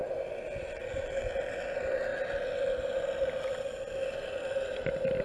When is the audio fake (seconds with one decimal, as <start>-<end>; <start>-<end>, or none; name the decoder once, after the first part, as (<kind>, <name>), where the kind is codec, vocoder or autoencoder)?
none